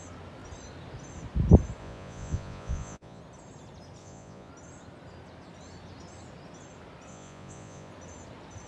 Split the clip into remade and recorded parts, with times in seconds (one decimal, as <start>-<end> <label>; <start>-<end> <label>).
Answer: 0.0-1.8 recorded; 1.8-3.2 remade; 3.2-4.0 recorded; 4.0-4.5 remade; 4.5-7.1 recorded; 7.1-7.9 remade; 7.9-8.7 recorded

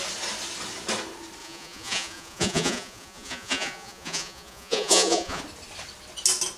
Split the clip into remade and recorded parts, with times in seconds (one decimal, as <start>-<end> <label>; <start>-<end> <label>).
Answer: 0.0-1.4 recorded; 1.4-5.4 remade; 5.4-6.6 recorded